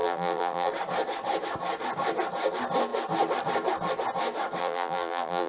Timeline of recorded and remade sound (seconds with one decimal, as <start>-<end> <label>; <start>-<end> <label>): 0.0-0.7 remade; 0.7-4.6 recorded; 4.6-5.5 remade